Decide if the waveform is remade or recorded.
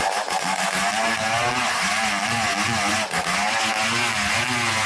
recorded